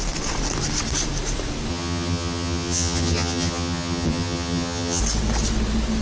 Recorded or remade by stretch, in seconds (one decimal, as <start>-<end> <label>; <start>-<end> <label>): 0.0-1.7 recorded; 1.7-5.0 remade; 5.0-6.0 recorded